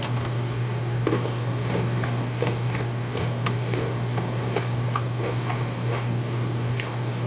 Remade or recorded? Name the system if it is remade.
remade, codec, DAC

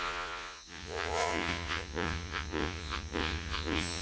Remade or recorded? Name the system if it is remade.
remade, vocoder, Vocos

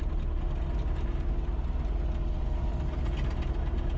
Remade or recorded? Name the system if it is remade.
recorded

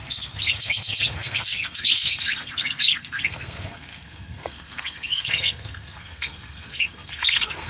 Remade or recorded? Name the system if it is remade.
remade, codec, SNAC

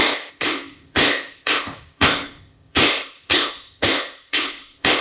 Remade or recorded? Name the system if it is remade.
remade, codec, ZipCodec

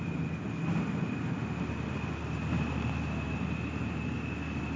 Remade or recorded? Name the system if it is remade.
recorded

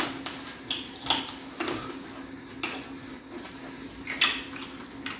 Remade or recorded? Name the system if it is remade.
recorded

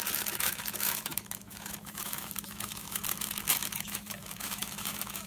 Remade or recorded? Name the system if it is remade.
remade, autoencoder, DAC-VAE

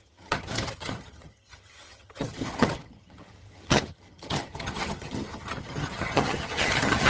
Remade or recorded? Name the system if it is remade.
remade, vocoder, HiFi-GAN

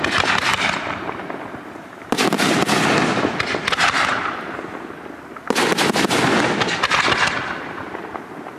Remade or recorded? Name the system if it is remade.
recorded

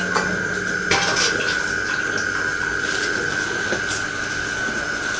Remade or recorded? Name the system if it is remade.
recorded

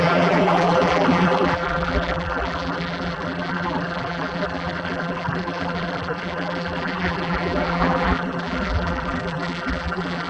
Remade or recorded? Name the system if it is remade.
remade, vocoder, BigVGAN v2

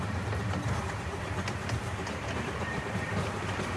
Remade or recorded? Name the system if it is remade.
recorded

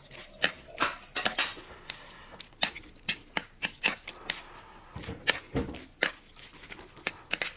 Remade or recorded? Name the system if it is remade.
recorded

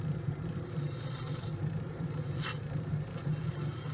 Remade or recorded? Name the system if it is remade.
remade, vocoder, BigVGAN v2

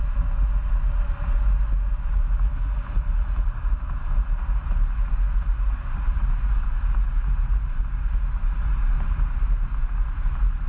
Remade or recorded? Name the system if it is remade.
recorded